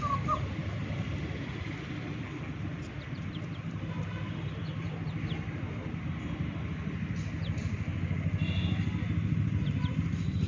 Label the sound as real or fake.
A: real